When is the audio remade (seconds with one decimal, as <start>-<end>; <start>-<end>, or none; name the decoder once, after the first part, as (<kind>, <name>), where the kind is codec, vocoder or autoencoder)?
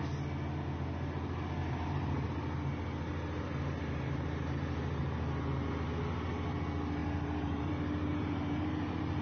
1.6-2.3 (vocoder, BigVGAN v2); 3.1-5.0; 7.0-9.2